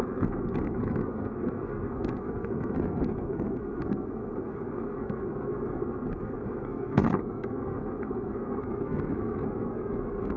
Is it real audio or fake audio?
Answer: fake